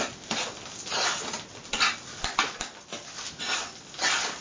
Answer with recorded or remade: recorded